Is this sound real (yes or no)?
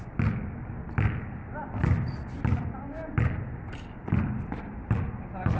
yes